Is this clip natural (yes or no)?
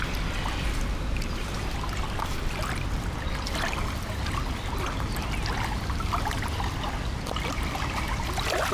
yes